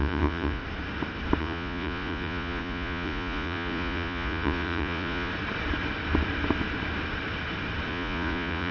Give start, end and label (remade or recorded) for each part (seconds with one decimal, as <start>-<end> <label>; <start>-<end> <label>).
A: 0.0-0.6 remade; 0.6-1.4 recorded; 1.4-5.3 remade; 5.3-7.9 recorded; 7.9-8.7 remade